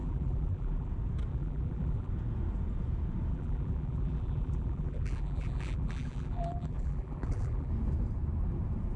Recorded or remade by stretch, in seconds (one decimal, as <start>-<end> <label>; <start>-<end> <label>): 0.0-0.9 remade; 0.9-1.3 recorded; 1.3-2.1 remade; 2.1-3.3 recorded; 3.3-7.7 remade; 7.7-9.0 recorded